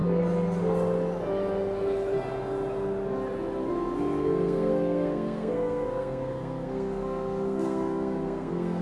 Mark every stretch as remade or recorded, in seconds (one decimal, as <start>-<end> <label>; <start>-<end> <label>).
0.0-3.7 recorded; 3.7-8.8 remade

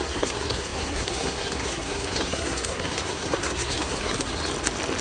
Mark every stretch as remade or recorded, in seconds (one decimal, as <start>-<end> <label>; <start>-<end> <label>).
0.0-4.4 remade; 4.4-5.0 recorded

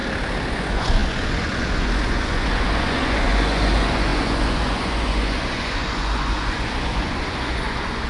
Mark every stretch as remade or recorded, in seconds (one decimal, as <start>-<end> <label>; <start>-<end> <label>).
0.0-0.5 recorded; 0.5-8.1 remade